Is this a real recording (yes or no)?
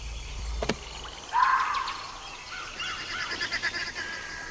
yes